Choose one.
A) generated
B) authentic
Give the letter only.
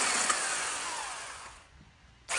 A